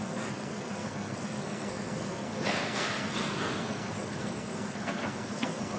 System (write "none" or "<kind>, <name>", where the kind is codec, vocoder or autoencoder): codec, SNAC